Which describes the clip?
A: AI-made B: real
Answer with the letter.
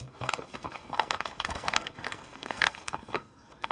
A